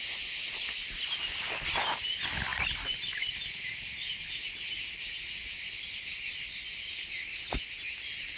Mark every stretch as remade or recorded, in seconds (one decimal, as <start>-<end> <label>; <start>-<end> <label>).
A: 0.0-8.4 recorded